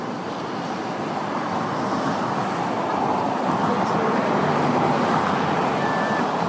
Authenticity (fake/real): real